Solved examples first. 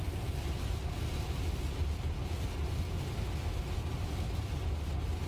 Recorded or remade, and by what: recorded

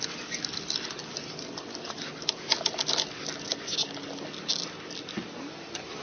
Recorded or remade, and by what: recorded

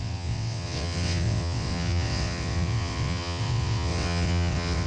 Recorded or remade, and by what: remade, vocoder, WaveNeXt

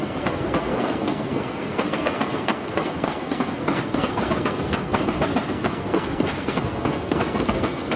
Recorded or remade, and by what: remade, codec, SNAC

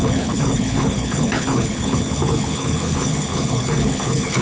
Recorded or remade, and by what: remade, codec, HILCodec